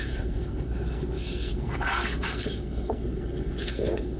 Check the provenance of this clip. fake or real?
fake